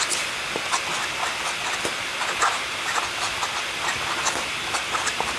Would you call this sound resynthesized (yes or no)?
no